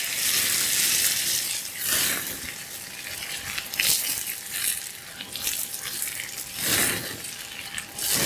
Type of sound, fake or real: fake